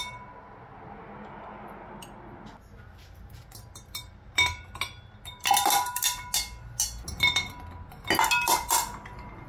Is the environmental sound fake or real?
real